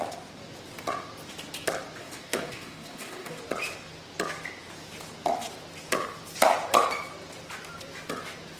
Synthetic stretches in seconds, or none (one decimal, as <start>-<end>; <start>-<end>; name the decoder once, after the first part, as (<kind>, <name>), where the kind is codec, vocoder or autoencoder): 2.0-3.4 (codec, DAC)